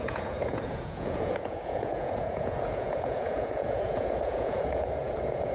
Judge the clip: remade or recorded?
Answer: remade